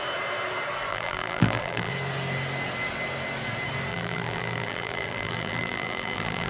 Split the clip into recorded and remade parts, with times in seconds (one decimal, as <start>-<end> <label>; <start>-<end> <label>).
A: 0.0-0.9 recorded; 0.9-1.9 remade; 1.9-3.9 recorded; 3.9-6.5 remade